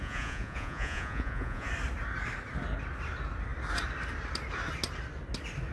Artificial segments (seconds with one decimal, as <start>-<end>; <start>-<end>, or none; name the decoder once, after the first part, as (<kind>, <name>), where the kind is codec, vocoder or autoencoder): 0.0-1.7 (vocoder, Vocos)